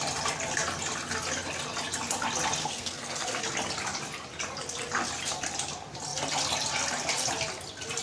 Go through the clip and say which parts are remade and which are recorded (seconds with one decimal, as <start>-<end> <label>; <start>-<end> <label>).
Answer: 0.0-2.6 recorded; 2.6-3.4 remade; 3.4-8.0 recorded